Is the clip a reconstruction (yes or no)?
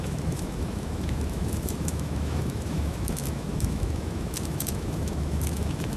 yes